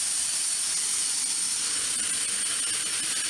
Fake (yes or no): no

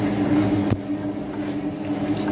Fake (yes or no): no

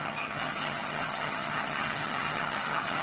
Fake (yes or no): yes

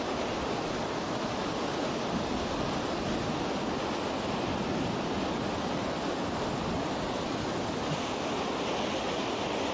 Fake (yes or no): no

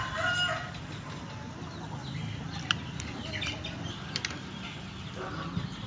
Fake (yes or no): no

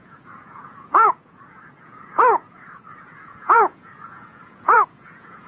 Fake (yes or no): yes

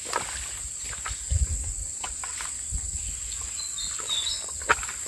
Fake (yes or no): no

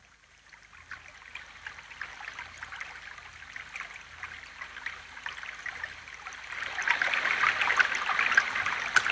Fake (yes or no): no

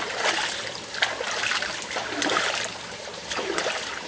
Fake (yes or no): no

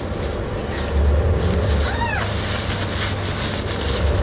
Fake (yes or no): no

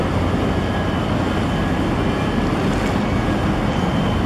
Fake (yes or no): no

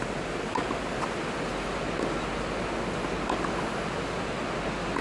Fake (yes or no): no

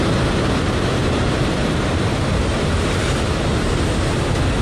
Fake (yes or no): yes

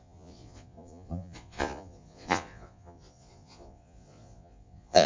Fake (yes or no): yes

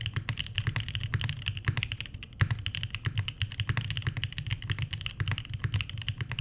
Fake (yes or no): no